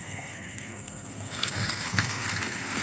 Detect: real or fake fake